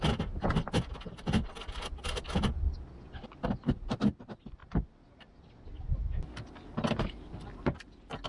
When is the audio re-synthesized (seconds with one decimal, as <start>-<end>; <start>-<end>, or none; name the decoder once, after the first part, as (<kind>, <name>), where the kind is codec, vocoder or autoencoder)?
none